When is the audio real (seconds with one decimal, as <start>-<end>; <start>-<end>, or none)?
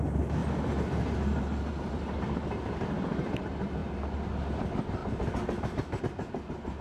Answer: 0.0-6.8